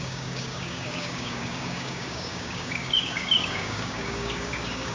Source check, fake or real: fake